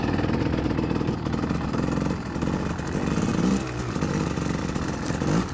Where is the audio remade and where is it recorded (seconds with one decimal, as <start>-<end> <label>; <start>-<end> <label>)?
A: 0.0-5.5 recorded